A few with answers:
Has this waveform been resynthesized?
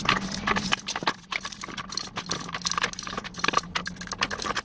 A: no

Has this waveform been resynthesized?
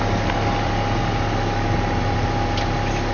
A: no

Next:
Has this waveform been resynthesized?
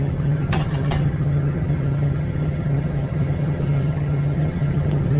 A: yes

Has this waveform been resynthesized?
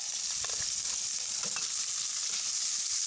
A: no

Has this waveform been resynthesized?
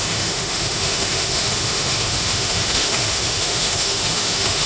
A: yes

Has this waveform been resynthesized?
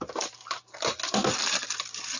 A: no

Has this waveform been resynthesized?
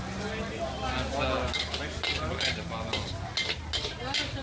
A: no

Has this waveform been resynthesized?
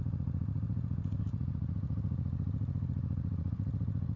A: yes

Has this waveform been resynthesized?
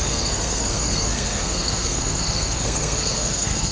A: yes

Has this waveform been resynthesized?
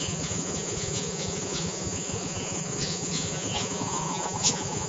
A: yes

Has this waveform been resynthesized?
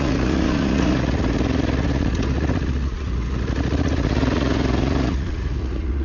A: yes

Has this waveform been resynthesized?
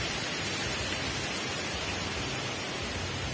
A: no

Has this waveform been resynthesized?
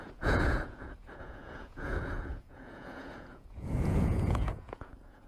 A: yes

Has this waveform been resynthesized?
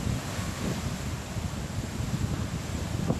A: no